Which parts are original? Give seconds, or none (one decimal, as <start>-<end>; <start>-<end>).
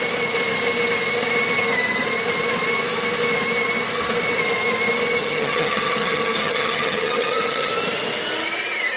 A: 0.0-5.2; 7.7-9.0